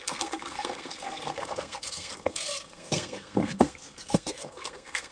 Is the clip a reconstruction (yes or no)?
yes